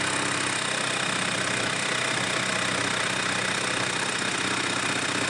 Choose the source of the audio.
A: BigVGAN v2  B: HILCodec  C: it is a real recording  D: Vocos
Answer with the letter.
C